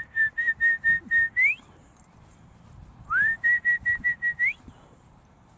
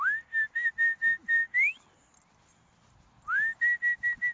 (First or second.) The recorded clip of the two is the second